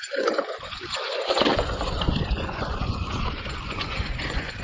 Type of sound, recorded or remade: remade